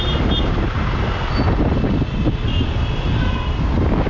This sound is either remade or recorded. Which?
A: recorded